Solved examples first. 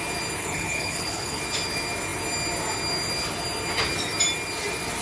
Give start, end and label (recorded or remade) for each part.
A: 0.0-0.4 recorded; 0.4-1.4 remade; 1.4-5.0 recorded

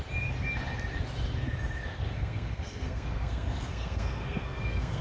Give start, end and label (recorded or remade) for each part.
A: 0.0-1.9 recorded; 1.9-5.0 remade

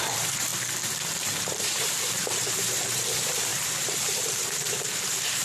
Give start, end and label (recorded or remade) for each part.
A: 0.0-0.5 remade; 0.5-1.2 recorded; 1.2-5.4 remade